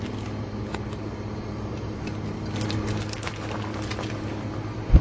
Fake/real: real